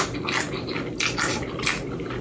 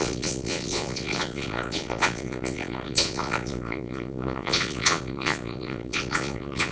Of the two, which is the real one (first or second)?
first